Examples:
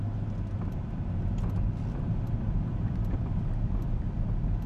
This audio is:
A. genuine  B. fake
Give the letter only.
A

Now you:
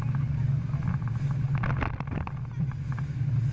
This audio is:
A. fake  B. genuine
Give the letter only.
B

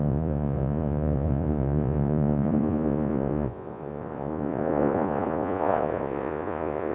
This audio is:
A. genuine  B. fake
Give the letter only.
B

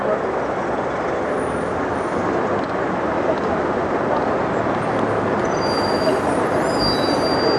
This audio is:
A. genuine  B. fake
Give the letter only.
A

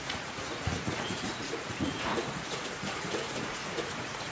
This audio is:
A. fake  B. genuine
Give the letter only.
A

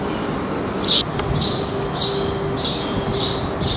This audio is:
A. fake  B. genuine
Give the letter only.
B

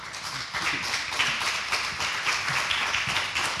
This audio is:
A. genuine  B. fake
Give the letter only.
A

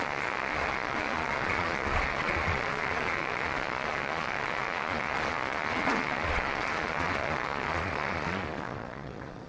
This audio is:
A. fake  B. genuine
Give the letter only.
A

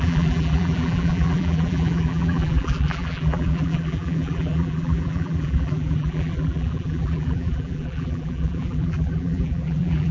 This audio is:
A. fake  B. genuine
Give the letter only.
A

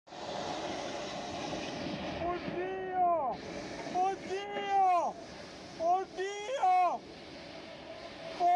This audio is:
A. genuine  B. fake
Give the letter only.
A